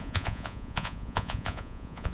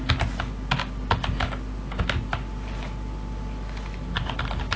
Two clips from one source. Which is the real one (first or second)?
second